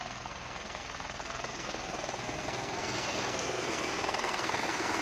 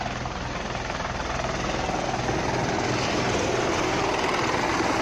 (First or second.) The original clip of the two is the second